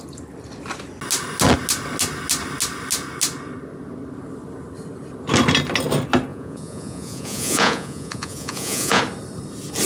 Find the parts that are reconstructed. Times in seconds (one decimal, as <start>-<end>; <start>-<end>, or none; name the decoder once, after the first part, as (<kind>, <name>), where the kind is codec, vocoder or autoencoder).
6.3-9.0 (vocoder, Vocos)